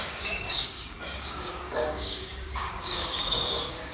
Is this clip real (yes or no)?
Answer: no